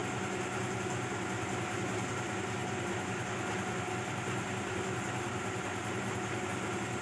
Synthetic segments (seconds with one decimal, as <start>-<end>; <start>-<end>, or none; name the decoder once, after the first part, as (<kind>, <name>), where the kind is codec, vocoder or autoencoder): none